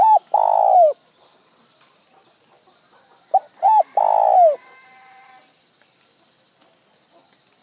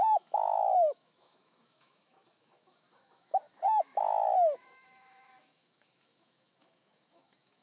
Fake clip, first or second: second